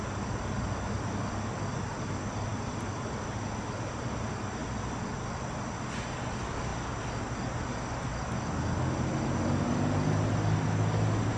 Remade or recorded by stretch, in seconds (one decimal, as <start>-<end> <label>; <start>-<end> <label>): 0.0-2.5 recorded; 2.5-3.2 remade; 3.2-11.4 recorded